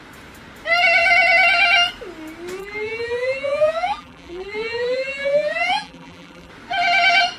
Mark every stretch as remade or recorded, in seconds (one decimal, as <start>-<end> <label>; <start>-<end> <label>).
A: 0.0-2.6 recorded; 2.6-6.5 remade; 6.5-7.4 recorded